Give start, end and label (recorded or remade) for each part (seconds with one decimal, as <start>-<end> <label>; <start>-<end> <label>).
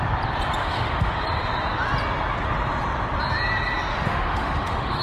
0.0-0.6 recorded; 0.6-1.1 remade; 1.1-3.9 recorded; 3.9-5.0 remade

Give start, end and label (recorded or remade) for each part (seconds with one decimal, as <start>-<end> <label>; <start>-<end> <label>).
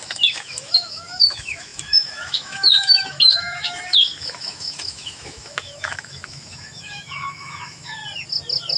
0.0-8.0 remade; 8.0-8.8 recorded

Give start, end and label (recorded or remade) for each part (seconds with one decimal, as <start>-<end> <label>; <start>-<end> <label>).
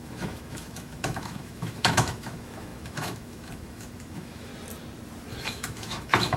0.0-4.5 remade; 4.5-5.4 recorded; 5.4-6.4 remade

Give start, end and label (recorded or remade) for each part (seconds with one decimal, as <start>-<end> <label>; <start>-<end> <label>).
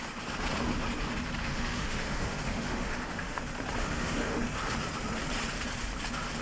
0.0-1.4 recorded; 1.4-3.4 remade; 3.4-3.8 recorded; 3.8-4.4 remade; 4.4-6.4 recorded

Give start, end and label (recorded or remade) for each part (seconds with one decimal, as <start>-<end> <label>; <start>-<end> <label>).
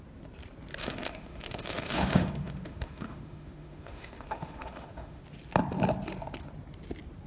0.0-0.8 recorded; 0.8-5.2 remade; 5.2-7.3 recorded